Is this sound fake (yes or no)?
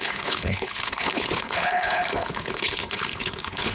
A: yes